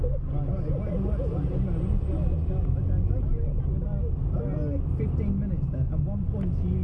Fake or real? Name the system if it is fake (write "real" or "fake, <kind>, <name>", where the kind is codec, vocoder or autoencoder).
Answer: real